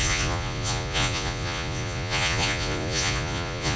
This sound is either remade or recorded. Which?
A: remade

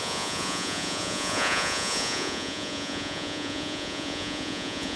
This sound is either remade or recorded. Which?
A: remade